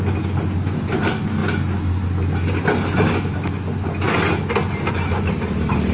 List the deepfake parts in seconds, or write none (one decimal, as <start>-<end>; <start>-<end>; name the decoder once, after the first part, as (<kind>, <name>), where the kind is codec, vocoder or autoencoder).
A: none